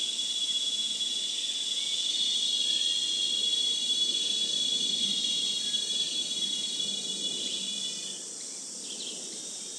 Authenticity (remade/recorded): recorded